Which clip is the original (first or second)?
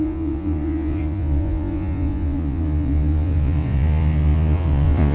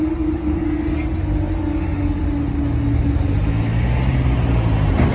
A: second